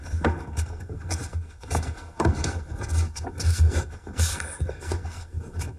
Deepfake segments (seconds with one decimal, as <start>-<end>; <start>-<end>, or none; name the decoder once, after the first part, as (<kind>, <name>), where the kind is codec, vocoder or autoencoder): 0.0-5.8 (codec, SNAC)